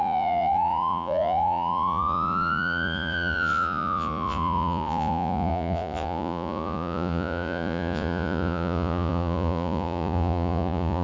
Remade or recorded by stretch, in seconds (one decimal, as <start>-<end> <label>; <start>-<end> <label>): 0.0-11.0 remade